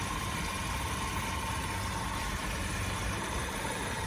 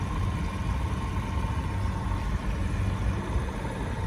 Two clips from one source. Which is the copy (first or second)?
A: first